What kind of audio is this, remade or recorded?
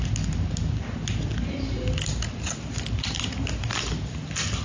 recorded